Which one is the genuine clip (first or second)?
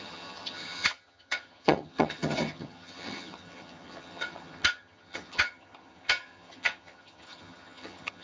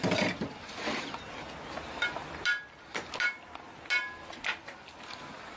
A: second